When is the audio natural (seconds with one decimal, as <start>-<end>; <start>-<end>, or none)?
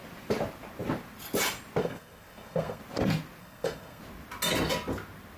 0.0-1.8; 2.8-3.4; 4.0-5.4